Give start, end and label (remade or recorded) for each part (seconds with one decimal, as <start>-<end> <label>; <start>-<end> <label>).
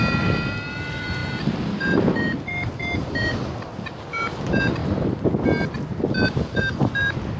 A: 0.0-7.4 recorded